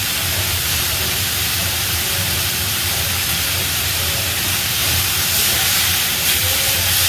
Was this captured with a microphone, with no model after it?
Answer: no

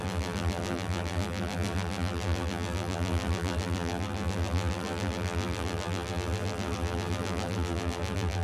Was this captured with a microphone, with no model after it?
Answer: no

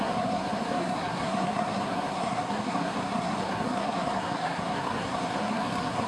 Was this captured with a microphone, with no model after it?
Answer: no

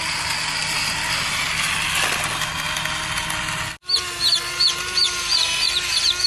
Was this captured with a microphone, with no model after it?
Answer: yes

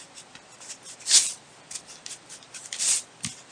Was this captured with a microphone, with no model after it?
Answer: yes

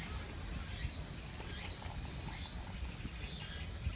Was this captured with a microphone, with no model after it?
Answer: yes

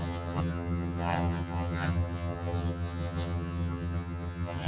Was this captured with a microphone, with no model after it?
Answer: no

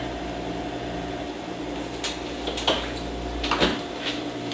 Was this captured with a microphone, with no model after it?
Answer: yes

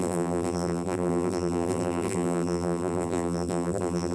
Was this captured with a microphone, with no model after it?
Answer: no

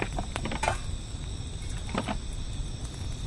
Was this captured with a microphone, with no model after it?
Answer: yes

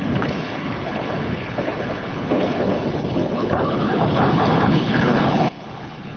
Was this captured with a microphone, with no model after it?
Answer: no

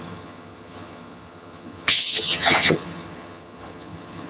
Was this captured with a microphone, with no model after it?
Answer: no